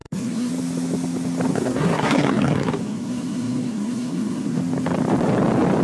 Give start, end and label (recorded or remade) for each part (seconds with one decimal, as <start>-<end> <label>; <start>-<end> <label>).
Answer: 0.0-0.5 remade; 0.5-1.5 recorded; 1.5-4.6 remade; 4.6-5.8 recorded